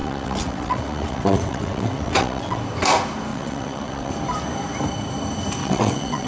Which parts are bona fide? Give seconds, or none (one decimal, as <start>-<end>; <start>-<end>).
2.6-3.3; 4.1-5.6